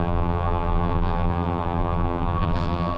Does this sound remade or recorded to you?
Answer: remade